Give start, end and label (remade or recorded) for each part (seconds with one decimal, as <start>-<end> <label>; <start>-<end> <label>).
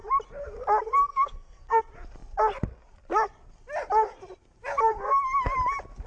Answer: 0.0-1.1 recorded; 1.1-1.8 remade; 1.8-6.1 recorded